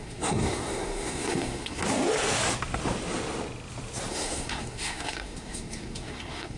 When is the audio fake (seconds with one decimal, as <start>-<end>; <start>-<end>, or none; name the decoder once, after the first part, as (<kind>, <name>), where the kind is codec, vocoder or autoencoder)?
0.0-1.8 (codec, SNAC); 4.1-6.6